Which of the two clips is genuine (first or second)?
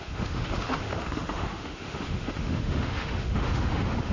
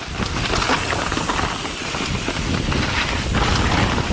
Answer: second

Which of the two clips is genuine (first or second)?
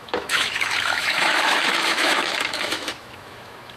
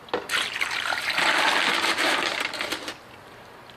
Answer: second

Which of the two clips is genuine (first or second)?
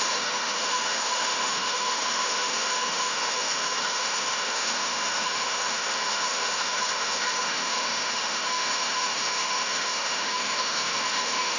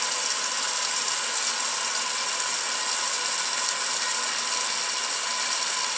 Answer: second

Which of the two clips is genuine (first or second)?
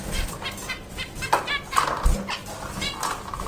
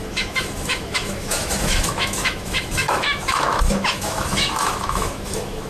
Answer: first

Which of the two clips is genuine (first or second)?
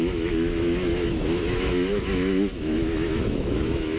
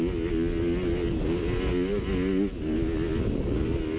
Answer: second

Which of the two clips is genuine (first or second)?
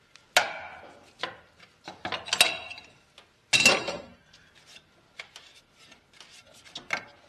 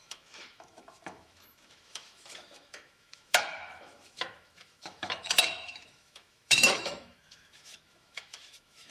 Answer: first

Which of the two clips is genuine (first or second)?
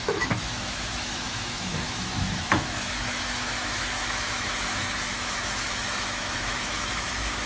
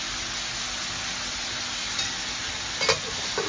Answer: second